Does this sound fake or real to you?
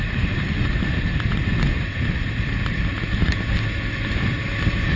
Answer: real